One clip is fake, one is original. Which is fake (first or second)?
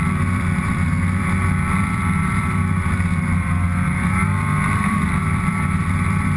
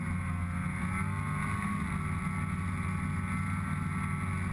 first